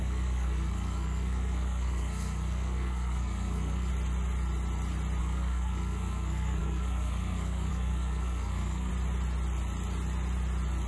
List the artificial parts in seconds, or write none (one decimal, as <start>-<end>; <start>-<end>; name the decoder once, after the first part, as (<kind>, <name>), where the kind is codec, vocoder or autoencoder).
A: 0.0-3.9 (codec, SNAC); 5.2-8.9